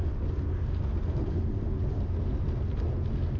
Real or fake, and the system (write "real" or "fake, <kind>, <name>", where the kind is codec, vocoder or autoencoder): real